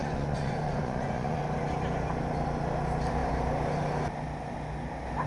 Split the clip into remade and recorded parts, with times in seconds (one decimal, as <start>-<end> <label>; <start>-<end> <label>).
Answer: 0.0-1.4 remade; 1.4-5.3 recorded